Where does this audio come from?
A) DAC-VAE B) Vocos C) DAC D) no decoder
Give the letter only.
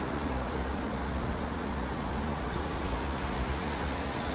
B